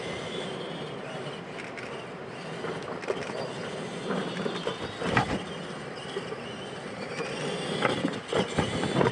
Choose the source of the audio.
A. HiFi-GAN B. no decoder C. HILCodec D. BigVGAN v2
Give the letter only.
B